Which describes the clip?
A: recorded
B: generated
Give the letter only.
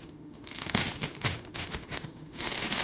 B